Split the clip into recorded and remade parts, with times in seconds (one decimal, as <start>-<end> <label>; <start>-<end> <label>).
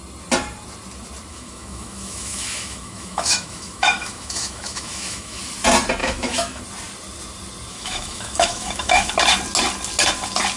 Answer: 0.0-1.3 recorded; 1.3-5.4 remade; 5.4-6.0 recorded; 6.0-6.6 remade; 6.6-7.7 recorded; 7.7-9.1 remade; 9.1-10.6 recorded